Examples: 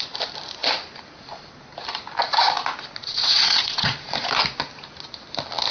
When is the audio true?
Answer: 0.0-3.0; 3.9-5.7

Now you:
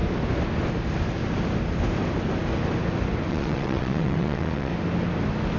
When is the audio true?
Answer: 0.0-3.3; 4.7-5.6

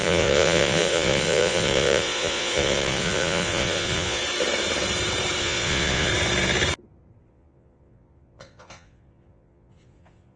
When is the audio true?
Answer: 4.2-5.4; 6.1-7.3

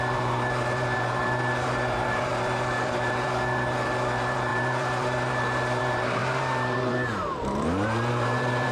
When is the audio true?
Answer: none

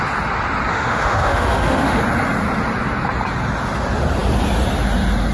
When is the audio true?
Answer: 0.0-0.7; 2.0-5.3